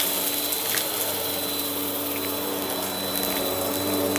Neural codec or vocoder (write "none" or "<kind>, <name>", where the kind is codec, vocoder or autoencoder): none